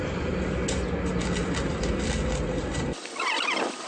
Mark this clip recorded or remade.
recorded